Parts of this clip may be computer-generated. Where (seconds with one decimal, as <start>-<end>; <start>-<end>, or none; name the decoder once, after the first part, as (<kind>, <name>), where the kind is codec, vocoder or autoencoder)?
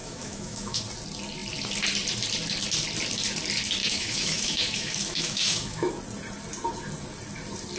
0.0-0.8 (autoencoder, DAC-VAE); 3.8-6.0